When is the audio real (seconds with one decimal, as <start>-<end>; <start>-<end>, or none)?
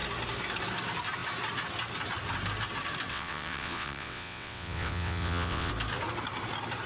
0.0-3.1; 5.7-6.9